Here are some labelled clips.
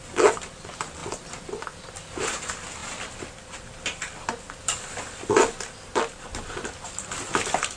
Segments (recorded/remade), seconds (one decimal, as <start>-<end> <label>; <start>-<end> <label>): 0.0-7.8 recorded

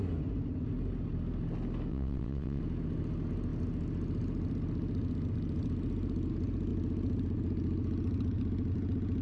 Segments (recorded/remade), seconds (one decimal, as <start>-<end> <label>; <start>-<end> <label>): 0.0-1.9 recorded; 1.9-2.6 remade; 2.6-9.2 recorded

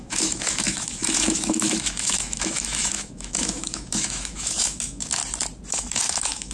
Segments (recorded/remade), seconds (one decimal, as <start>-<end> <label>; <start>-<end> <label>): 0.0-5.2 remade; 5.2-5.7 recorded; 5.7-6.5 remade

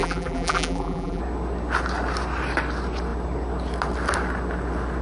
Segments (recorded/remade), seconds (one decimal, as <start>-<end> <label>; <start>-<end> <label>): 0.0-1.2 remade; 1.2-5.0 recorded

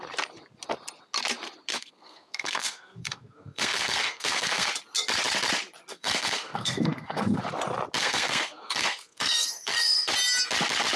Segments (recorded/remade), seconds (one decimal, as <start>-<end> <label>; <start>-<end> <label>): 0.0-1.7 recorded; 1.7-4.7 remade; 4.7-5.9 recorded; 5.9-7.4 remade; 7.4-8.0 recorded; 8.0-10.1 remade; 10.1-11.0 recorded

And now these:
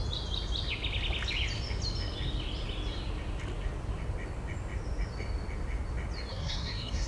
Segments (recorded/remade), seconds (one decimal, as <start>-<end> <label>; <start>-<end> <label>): 0.0-6.3 recorded; 6.3-7.1 remade